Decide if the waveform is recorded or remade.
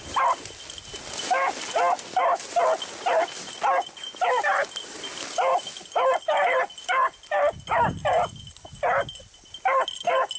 recorded